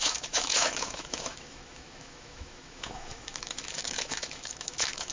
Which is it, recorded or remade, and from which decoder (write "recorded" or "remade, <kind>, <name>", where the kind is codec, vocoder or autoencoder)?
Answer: remade, autoencoder, DAC-VAE